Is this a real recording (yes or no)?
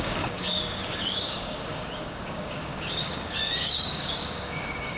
no